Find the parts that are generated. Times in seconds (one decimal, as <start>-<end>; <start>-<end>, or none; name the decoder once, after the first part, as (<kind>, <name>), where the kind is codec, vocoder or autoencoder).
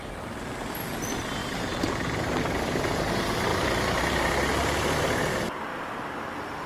1.4-2.4 (vocoder, BigVGAN v2); 3.5-5.0; 5.7-6.7